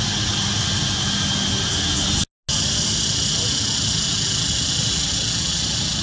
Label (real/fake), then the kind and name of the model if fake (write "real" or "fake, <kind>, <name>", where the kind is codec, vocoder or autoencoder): real